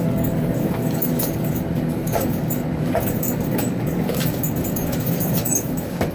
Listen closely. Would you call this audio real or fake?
fake